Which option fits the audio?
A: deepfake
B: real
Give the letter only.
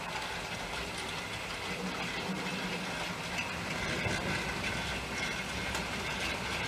B